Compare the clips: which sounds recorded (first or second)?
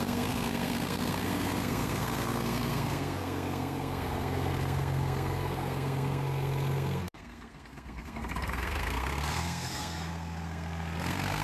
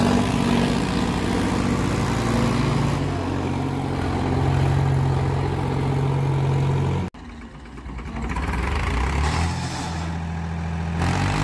second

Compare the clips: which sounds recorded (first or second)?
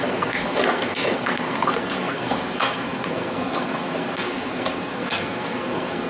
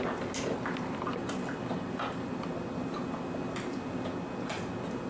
second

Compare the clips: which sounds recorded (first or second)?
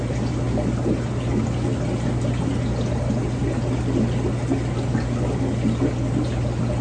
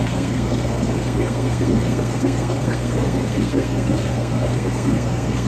first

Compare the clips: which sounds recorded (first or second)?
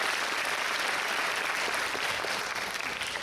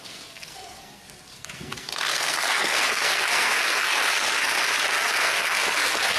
first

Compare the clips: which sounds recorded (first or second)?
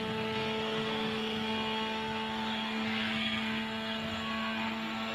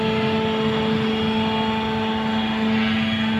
second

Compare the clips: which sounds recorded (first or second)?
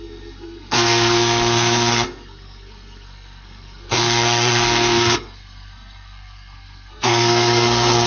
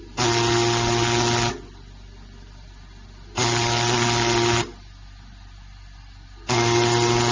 second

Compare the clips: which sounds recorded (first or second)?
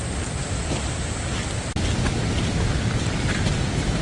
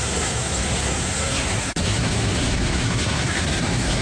first